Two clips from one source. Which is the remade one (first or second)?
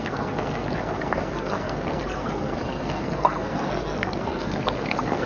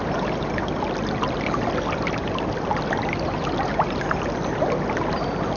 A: first